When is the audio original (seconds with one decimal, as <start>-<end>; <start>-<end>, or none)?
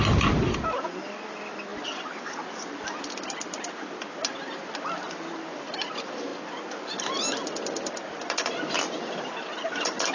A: 0.0-10.1